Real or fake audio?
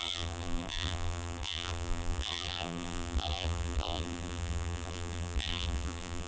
fake